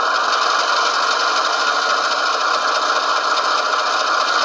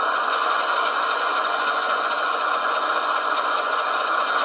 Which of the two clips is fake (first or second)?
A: second